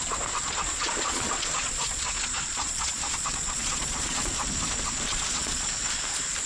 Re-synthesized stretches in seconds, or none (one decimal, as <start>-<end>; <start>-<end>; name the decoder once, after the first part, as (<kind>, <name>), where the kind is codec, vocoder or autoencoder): 0.4-4.3 (vocoder, Vocos); 5.1-5.7